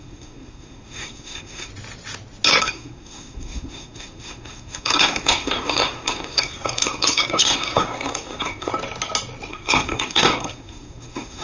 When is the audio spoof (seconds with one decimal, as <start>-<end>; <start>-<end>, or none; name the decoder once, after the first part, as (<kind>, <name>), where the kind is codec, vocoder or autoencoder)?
0.0-1.7 (codec, SNAC); 2.6-8.7; 9.5-11.4